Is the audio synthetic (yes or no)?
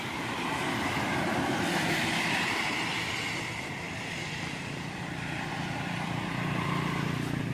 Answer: yes